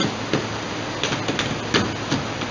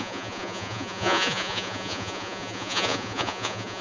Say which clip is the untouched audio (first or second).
first